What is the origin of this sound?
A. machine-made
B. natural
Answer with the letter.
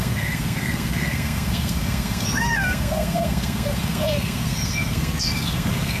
A